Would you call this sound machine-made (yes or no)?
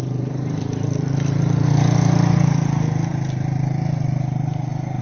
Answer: no